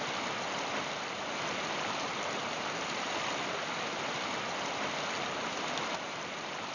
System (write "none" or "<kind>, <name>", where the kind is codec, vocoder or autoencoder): none